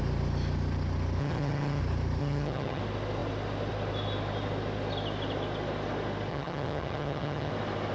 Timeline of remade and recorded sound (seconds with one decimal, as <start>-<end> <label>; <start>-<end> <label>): 0.0-1.2 recorded; 1.2-1.8 remade; 1.8-2.2 recorded; 2.2-2.8 remade; 2.8-6.3 recorded; 6.3-7.5 remade; 7.5-7.9 recorded